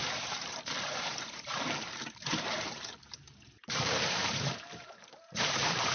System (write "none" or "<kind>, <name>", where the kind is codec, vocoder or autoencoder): vocoder, BigVGAN v2